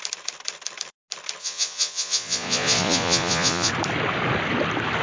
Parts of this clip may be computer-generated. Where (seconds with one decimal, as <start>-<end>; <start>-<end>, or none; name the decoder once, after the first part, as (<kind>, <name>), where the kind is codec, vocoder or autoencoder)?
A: 1.4-3.7 (vocoder, Vocos)